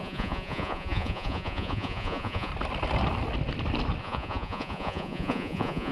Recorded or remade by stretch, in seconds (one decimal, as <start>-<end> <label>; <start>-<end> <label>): 0.0-2.5 remade; 2.5-4.0 recorded; 4.0-5.9 remade